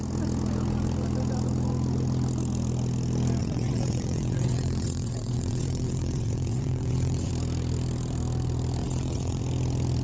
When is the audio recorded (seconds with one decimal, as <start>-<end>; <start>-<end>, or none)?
0.0-3.4; 7.3-8.8; 9.4-10.0